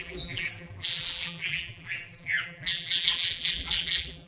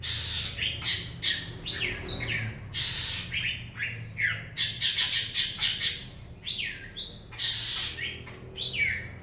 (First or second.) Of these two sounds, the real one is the second